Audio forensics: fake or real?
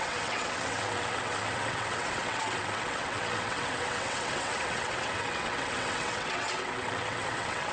fake